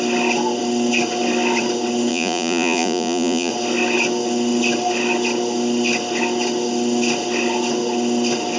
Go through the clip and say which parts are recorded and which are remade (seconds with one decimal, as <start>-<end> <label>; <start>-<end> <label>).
0.0-2.1 recorded; 2.1-3.5 remade; 3.5-8.6 recorded